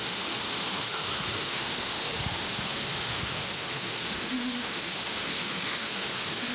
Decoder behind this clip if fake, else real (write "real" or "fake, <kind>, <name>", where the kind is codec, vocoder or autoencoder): fake, autoencoder, DAC-VAE